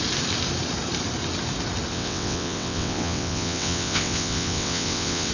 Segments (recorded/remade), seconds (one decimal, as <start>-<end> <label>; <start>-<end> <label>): 0.0-1.9 recorded; 1.9-5.3 remade